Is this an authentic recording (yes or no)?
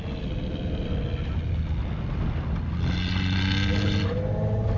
yes